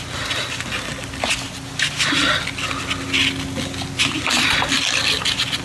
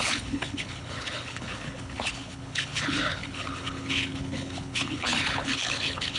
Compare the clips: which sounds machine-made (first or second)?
second